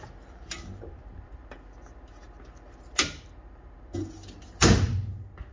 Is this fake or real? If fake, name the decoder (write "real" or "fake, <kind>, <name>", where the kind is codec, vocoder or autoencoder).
real